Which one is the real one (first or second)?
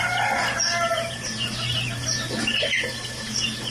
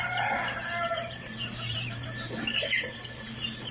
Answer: first